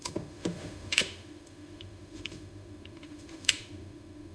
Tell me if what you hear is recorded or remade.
remade